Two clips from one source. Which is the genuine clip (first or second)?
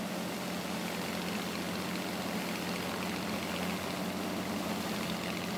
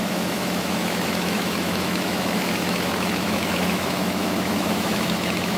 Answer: first